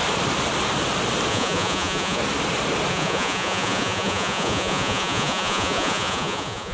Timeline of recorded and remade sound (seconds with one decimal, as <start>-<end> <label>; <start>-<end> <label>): 0.0-1.3 recorded; 1.3-2.2 remade; 2.2-2.9 recorded; 2.9-6.7 remade